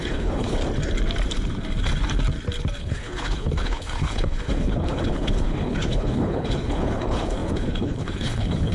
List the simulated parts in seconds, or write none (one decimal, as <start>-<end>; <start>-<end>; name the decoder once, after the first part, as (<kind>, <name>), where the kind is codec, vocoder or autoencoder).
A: 0.0-0.6 (codec, HILCodec); 2.8-8.7